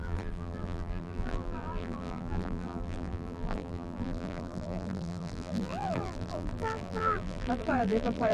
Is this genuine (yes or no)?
no